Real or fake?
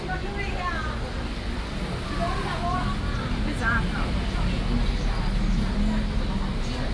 real